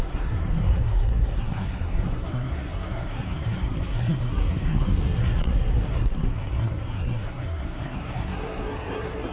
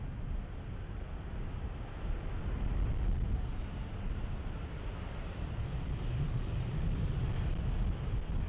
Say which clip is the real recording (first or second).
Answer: second